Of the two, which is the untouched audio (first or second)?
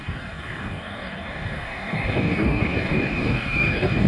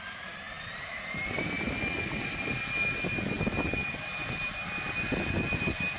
second